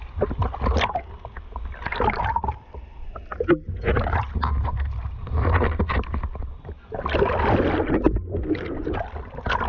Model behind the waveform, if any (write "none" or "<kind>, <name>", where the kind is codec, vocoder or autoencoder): none